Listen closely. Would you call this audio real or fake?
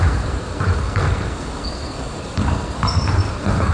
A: fake